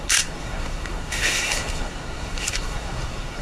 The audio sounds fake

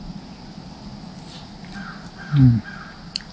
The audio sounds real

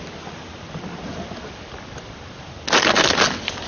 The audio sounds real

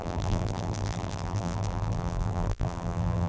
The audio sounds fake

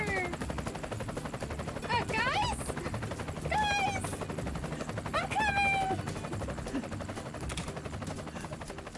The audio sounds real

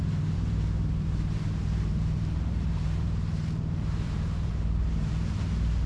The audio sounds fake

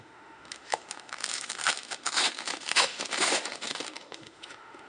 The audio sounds fake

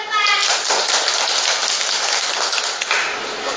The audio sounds real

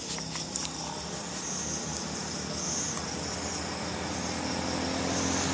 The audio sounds real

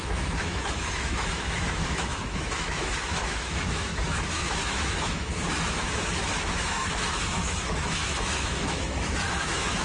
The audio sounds fake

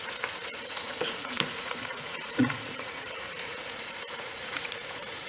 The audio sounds fake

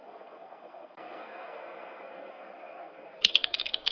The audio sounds fake